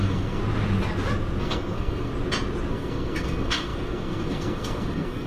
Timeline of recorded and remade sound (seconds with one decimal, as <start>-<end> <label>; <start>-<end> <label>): 0.0-0.4 remade; 0.4-1.4 recorded; 1.4-2.1 remade; 2.1-2.7 recorded; 2.7-5.3 remade